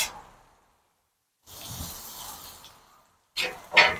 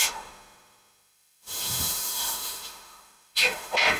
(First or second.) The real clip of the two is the first